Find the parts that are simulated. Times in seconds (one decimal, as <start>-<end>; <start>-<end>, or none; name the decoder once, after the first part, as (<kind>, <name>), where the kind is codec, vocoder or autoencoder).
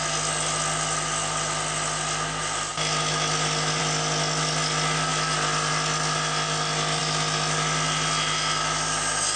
none